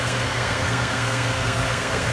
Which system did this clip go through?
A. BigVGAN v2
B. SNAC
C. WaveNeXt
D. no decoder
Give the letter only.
B